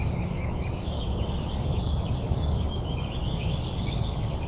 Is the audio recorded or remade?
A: remade